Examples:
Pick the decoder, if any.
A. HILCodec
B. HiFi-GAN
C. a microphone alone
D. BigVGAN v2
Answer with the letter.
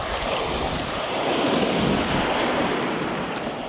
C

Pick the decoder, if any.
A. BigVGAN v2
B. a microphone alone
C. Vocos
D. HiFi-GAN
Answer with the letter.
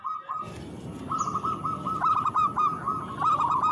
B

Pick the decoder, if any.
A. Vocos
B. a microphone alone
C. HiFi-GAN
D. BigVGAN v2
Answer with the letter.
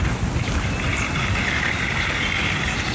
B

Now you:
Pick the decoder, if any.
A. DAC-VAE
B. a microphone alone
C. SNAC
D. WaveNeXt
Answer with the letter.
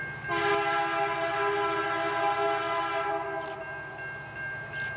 B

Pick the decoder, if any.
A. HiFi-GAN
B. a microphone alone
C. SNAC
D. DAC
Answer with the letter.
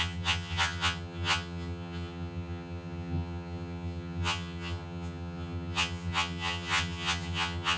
A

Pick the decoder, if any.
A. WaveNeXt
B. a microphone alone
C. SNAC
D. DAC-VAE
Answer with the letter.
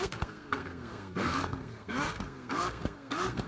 C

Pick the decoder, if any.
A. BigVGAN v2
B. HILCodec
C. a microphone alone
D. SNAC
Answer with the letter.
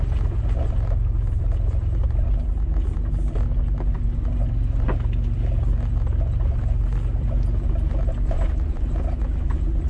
C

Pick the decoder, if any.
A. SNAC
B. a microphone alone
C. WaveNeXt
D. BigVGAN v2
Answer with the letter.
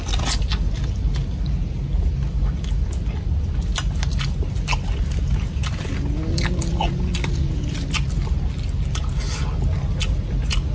B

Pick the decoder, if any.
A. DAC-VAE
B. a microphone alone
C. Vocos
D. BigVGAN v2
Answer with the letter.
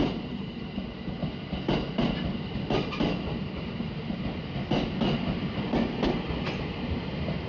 B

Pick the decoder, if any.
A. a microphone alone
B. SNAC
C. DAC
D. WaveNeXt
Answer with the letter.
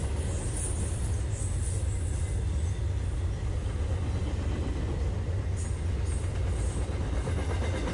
A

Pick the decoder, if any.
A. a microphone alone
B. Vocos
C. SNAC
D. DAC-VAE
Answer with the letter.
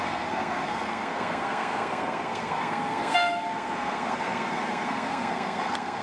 C